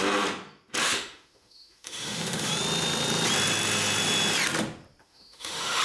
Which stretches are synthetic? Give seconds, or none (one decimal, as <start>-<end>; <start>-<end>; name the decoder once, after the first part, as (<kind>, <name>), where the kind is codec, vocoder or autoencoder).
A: 0.8-2.5 (autoencoder, DAC-VAE); 5.0-5.8